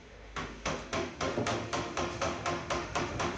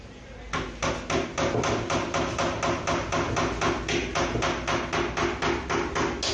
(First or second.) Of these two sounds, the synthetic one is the first